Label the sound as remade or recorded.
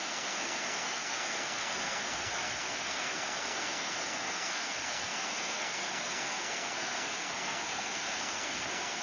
remade